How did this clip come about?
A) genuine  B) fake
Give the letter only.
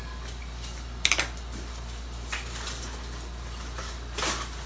A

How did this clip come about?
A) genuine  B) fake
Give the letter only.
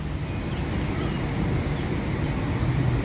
A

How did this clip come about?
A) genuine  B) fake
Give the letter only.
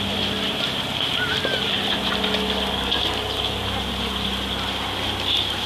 A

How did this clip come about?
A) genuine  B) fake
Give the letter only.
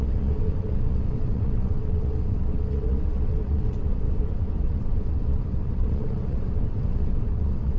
B